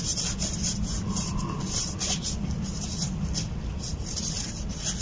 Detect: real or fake real